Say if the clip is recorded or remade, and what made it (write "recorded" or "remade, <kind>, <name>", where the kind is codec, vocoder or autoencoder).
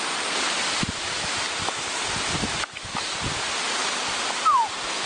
recorded